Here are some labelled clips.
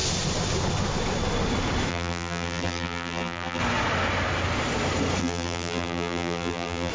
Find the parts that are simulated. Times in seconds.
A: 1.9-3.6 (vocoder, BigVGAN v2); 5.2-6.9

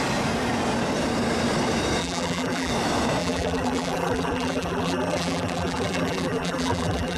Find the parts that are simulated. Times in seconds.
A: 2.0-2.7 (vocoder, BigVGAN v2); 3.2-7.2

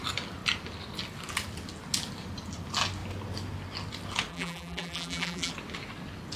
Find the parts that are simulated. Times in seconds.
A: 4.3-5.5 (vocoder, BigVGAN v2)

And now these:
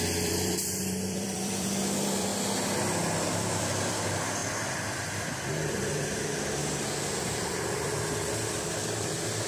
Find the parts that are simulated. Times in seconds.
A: 0.0-2.3 (vocoder, BigVGAN v2); 3.0-4.4; 5.5-6.6; 7.6-9.5

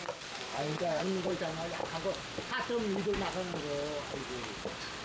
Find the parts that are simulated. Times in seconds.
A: 0.5-1.4 (vocoder, BigVGAN v2)

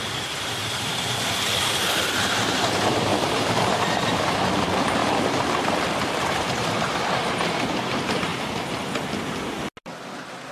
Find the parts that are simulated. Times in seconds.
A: 0.0-5.0 (vocoder, BigVGAN v2); 6.2-8.3

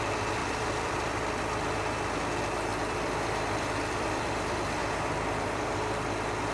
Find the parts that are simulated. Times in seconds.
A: 0.4-1.4 (vocoder, BigVGAN v2); 2.7-4.3; 4.8-5.6